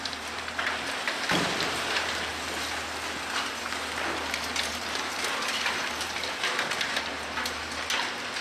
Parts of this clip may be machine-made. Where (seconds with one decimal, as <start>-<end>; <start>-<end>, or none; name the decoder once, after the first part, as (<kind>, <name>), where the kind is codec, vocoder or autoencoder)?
0.0-2.3 (vocoder, BigVGAN v2); 4.7-8.4